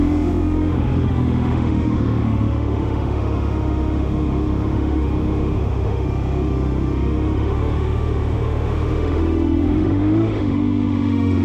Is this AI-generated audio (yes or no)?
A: yes